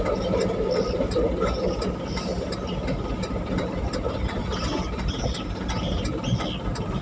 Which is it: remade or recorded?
recorded